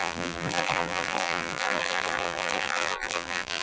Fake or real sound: fake